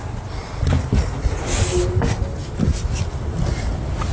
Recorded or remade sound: recorded